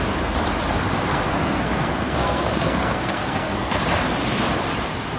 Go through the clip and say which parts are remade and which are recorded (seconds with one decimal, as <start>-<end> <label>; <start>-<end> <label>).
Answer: 0.0-1.1 recorded; 1.1-3.8 remade; 3.8-5.2 recorded